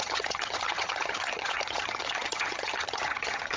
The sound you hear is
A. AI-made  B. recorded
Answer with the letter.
A